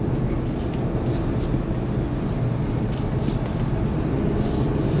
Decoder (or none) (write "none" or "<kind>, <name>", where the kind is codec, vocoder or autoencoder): none